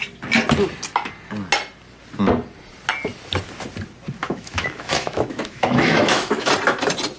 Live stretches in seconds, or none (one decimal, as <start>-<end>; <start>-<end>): 0.0-4.2; 6.5-7.2